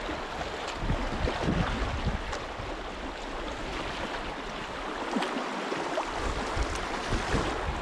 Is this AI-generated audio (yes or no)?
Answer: no